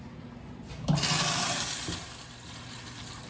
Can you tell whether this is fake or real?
real